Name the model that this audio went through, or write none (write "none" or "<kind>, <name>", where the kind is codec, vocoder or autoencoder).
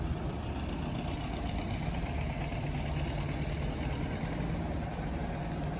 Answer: none